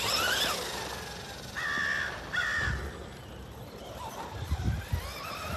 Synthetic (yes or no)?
no